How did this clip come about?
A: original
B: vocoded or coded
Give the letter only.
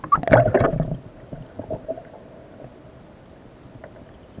A